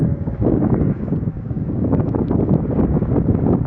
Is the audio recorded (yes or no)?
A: no